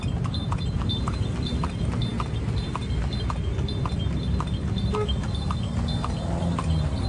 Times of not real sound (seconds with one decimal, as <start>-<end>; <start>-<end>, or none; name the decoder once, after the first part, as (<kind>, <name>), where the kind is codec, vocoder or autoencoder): none